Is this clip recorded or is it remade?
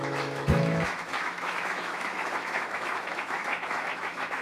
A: remade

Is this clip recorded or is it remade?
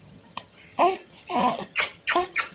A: remade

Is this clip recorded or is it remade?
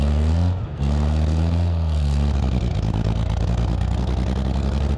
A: remade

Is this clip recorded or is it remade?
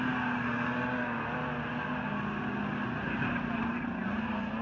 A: recorded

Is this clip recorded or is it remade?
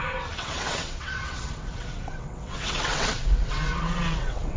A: remade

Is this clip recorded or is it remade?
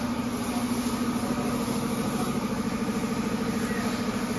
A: recorded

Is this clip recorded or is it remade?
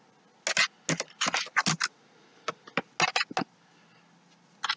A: recorded